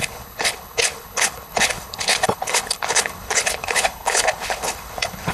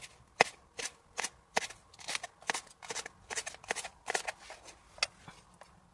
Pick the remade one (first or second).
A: first